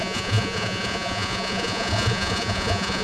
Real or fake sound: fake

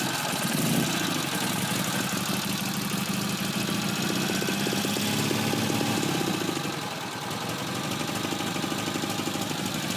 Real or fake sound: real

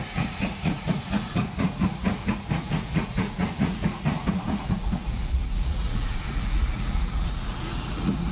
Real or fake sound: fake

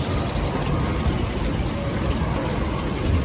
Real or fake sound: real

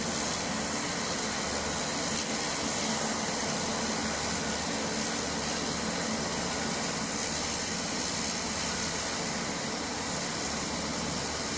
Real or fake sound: real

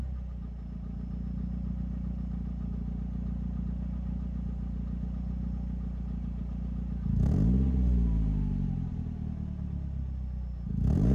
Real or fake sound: real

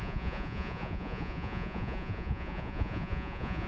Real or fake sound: fake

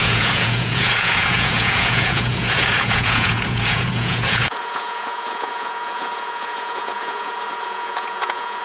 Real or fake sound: fake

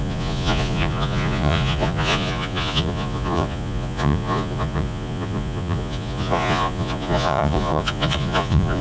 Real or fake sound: fake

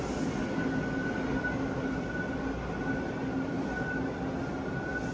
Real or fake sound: real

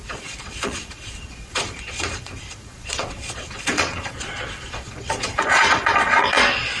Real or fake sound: fake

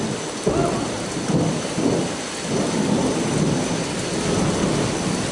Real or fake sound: real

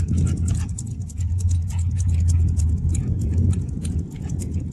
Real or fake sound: fake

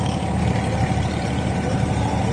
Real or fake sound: real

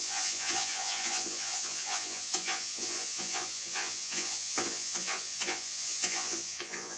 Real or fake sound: fake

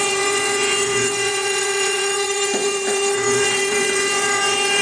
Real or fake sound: fake